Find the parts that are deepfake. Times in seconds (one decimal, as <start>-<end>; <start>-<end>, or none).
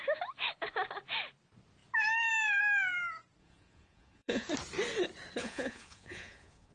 3.4-4.5; 5.4-6.7